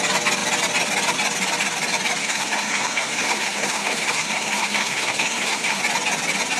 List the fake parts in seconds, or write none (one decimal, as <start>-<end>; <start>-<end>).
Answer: 2.2-5.8

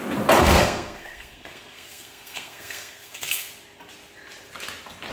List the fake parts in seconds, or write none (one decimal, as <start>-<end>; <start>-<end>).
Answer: 0.4-3.5

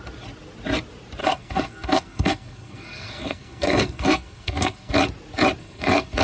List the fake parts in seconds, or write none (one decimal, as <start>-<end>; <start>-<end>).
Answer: 1.2-4.9; 5.6-6.2

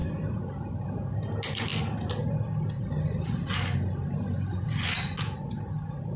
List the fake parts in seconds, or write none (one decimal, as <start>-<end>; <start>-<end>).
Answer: none

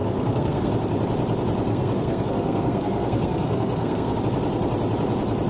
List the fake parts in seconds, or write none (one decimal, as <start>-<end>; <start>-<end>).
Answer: 0.0-0.7; 1.7-4.2

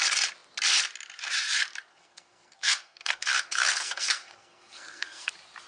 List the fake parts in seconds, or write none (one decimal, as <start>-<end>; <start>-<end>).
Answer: 1.9-5.3

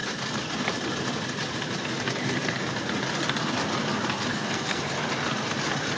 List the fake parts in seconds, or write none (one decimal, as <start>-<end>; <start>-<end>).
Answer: 4.3-4.8

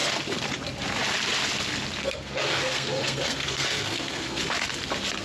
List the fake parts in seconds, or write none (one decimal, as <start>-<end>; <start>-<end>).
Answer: 2.0-4.4